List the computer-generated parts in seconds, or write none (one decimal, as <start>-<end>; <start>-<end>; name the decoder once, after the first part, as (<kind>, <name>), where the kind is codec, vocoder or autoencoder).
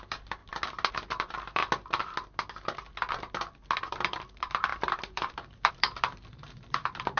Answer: 0.0-0.4 (vocoder, BigVGAN v2); 0.9-1.6; 3.8-7.2